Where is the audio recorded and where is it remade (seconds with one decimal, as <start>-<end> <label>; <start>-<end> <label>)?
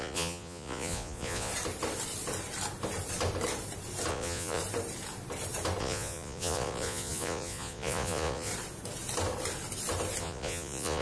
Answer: 0.0-1.5 remade; 1.5-4.1 recorded; 4.1-4.6 remade; 4.6-5.8 recorded; 5.8-8.5 remade; 8.5-10.2 recorded; 10.2-11.0 remade